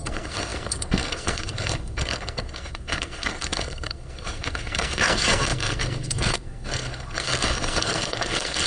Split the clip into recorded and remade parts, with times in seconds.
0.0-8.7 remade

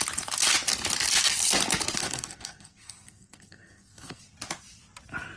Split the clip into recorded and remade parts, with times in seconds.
0.0-2.0 recorded; 2.0-4.2 remade; 4.2-5.4 recorded